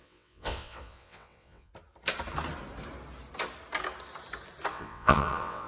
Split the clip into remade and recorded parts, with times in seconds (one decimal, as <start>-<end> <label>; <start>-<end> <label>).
0.0-1.7 remade; 1.7-4.7 recorded; 4.7-5.7 remade